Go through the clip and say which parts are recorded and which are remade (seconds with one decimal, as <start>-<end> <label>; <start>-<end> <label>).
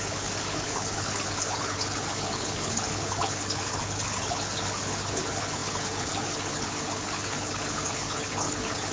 0.0-8.9 remade